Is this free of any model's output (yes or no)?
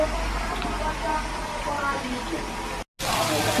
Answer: yes